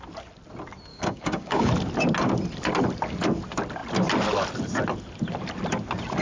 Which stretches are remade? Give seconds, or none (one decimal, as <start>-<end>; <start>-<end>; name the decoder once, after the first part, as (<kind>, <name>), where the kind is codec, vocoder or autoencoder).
0.9-1.7 (codec, DAC)